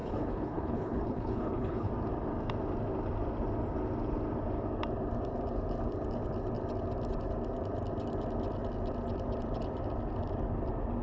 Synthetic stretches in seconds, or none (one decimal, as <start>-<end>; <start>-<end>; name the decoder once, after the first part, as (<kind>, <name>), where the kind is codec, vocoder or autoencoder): 0.0-1.9 (codec, HILCodec)